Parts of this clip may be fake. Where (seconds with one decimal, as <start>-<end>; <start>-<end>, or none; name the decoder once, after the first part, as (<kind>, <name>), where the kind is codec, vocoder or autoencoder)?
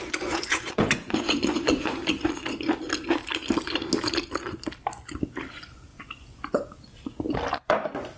0.0-2.0 (vocoder, Vocos); 5.5-6.9; 7.5-8.2